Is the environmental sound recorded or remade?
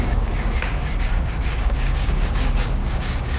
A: remade